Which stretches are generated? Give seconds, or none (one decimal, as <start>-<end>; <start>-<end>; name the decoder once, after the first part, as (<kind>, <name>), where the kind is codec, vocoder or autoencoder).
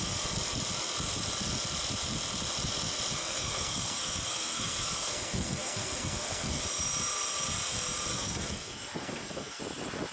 3.2-6.6 (codec, SNAC); 8.1-9.6